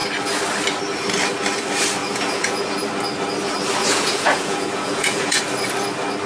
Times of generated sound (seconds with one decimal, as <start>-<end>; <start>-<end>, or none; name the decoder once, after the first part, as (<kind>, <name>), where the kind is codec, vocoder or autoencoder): 2.0-2.7 (vocoder, Vocos); 3.8-5.4